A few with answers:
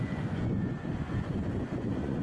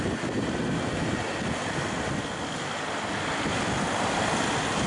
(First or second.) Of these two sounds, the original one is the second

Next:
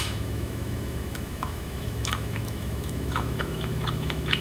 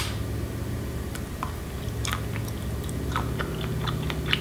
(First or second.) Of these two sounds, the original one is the second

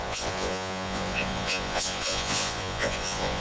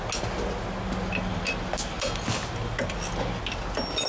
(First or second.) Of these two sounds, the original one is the second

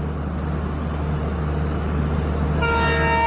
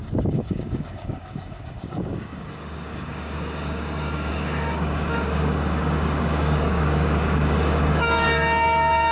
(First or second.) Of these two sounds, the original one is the first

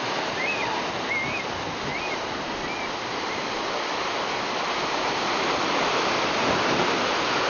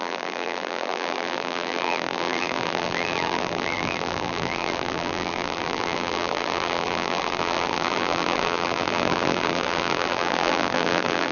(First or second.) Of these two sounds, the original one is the first